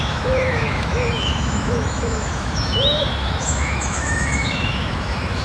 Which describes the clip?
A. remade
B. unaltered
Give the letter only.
A